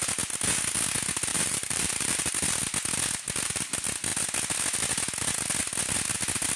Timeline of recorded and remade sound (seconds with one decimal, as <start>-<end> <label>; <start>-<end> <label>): 0.0-1.3 recorded; 1.3-2.3 remade; 2.3-6.6 recorded